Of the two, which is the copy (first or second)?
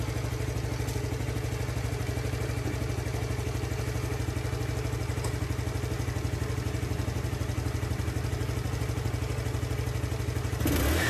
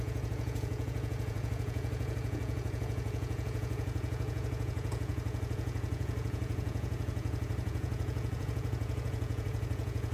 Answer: second